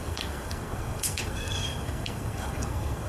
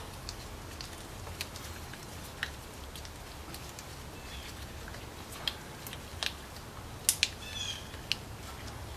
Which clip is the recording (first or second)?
second